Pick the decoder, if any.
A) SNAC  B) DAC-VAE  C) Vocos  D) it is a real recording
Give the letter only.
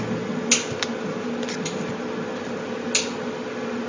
D